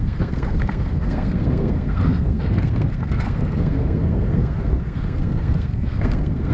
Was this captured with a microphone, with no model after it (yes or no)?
no